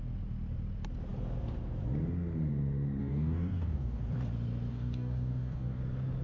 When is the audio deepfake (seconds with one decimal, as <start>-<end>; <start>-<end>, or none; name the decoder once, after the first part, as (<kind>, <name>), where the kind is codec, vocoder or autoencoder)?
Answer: 3.0-4.0 (codec, DAC); 4.7-5.8